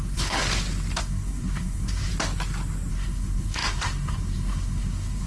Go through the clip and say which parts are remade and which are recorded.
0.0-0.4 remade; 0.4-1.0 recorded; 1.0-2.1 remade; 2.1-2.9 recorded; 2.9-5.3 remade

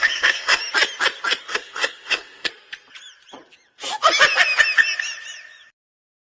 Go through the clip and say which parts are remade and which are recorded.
0.0-0.6 remade; 0.6-1.4 recorded; 1.4-2.5 remade; 2.5-6.3 recorded

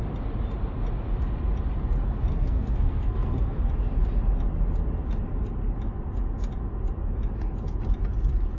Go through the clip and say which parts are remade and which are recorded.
0.0-2.3 recorded; 2.3-3.7 remade; 3.7-8.6 recorded